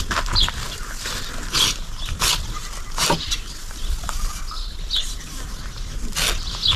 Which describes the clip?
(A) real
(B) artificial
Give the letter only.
A